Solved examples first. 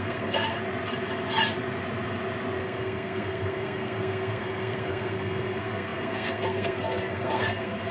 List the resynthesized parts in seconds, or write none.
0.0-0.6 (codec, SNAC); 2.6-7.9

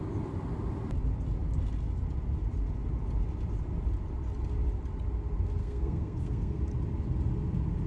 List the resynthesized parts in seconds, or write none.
5.6-6.6 (codec, SNAC)

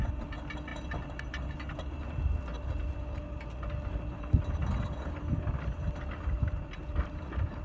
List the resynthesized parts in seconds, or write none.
none

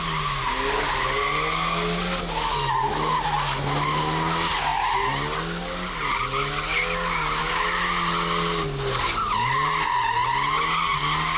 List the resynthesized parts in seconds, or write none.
none